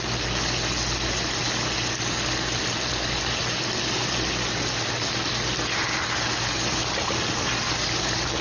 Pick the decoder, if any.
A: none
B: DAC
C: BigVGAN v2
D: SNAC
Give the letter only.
A